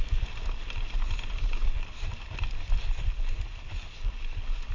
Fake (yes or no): no